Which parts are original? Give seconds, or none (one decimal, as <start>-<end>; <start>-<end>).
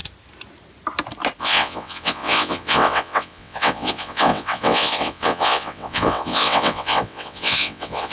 0.0-1.4